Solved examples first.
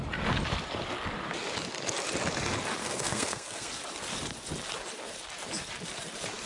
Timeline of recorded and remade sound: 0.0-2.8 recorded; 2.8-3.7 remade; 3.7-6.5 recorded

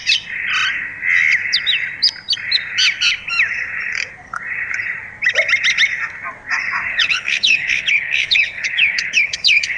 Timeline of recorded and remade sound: 0.0-6.9 recorded; 6.9-9.8 remade

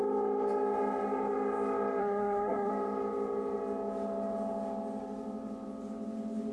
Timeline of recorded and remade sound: 0.0-2.0 recorded; 2.0-2.7 remade; 2.7-6.5 recorded

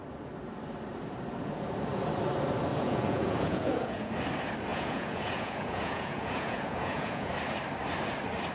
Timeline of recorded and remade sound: 0.0-2.7 recorded; 2.7-4.1 remade; 4.1-4.7 recorded; 4.7-7.3 remade; 7.3-8.5 recorded

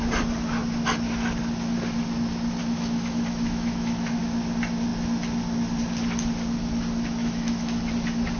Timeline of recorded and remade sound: 0.0-2.6 recorded; 2.6-4.2 remade; 4.2-7.2 recorded; 7.2-7.9 remade; 7.9-8.4 recorded